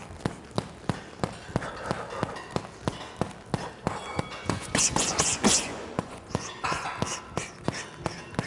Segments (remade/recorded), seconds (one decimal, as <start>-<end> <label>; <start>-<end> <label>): 0.0-4.1 recorded; 4.1-6.9 remade; 6.9-8.5 recorded